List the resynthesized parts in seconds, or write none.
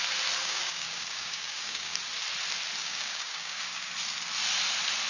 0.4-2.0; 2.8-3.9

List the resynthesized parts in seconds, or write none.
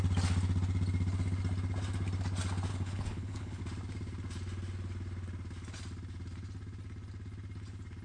2.7-3.6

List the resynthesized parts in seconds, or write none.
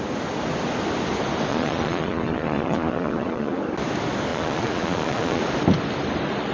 1.5-3.6; 4.3-5.4